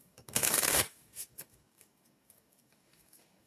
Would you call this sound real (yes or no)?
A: no